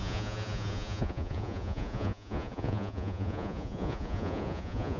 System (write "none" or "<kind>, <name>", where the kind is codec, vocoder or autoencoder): vocoder, Vocos